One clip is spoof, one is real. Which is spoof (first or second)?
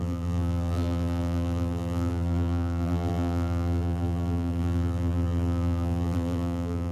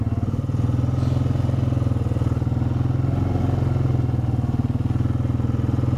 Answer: first